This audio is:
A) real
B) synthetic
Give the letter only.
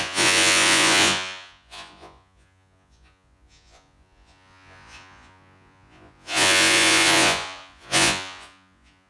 B